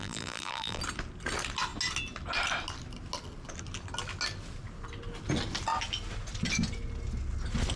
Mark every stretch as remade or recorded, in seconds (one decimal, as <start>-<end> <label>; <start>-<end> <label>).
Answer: 0.0-0.8 remade; 0.8-7.8 recorded